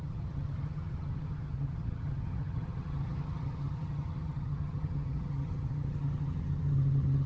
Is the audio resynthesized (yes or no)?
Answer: yes